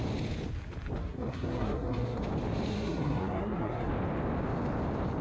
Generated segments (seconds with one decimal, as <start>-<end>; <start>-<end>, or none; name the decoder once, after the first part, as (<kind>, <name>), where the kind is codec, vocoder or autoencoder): 1.0-2.2 (codec, SNAC); 2.7-3.9